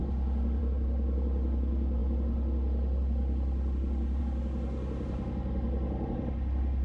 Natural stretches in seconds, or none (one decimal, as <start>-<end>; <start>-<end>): 0.0-6.8